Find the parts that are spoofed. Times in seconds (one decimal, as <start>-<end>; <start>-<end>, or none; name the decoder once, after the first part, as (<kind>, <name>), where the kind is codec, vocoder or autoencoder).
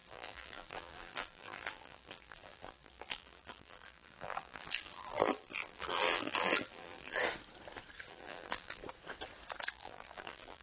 0.0-7.2 (vocoder, BigVGAN v2); 8.1-8.8; 9.7-10.6